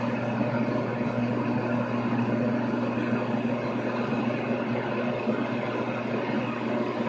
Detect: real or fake real